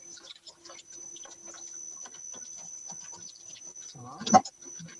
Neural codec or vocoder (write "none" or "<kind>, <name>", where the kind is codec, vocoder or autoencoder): none